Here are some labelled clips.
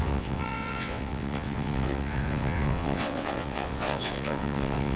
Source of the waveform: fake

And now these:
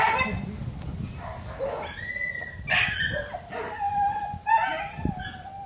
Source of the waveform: real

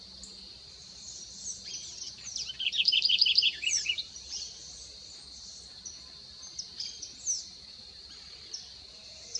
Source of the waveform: fake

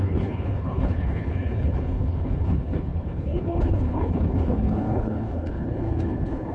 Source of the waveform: fake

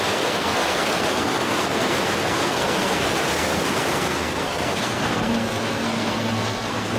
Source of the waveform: fake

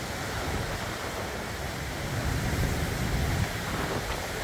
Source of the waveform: real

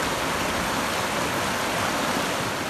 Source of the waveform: real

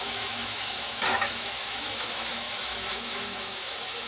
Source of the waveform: fake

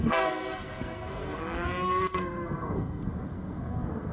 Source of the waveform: fake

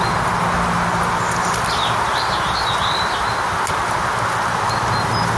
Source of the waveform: real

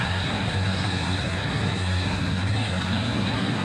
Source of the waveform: fake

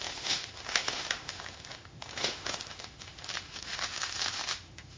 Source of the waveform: fake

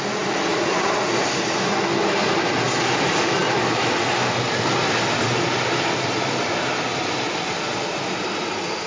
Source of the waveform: real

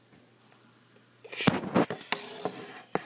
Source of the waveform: real